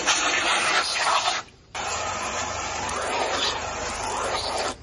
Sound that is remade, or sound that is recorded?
remade